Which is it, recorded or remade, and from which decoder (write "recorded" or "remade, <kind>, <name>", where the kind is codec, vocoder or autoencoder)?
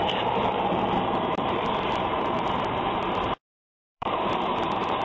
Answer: remade, vocoder, BigVGAN v2